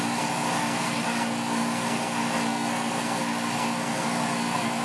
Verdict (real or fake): fake